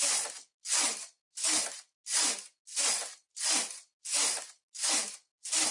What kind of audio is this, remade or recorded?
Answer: recorded